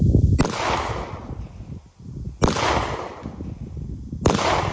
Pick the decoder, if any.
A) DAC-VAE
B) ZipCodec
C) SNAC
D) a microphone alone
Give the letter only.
D